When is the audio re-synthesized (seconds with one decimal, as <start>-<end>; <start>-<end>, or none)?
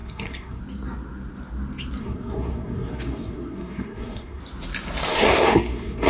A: 0.0-0.6; 2.0-4.4; 5.1-6.1